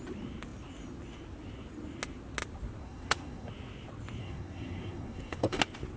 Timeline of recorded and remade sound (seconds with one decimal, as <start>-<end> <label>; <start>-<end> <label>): 0.0-2.8 recorded; 2.8-3.5 remade; 3.5-4.2 recorded; 4.2-5.6 remade; 5.6-6.0 recorded